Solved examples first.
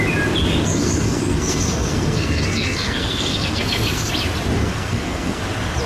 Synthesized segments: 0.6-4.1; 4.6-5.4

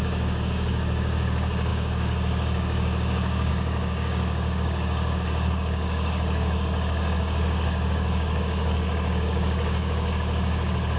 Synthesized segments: 0.0-11.0

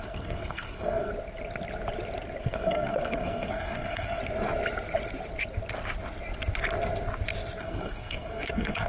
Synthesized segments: 0.0-1.1; 2.4-4.2; 7.6-8.9

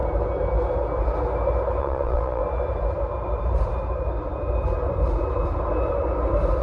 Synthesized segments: 1.8-2.4

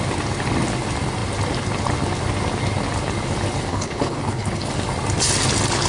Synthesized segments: 3.7-4.7

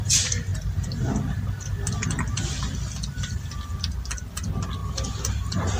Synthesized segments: none

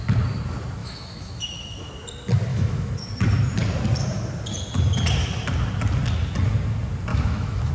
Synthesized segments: 0.8-1.9; 2.5-3.1; 7.1-7.7